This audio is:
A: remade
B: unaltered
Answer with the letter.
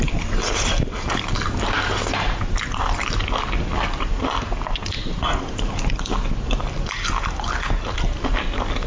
B